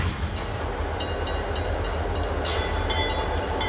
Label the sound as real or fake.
real